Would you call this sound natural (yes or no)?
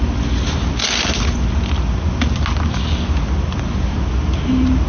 yes